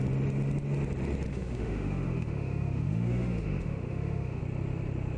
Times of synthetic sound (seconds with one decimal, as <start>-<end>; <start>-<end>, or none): 1.3-4.4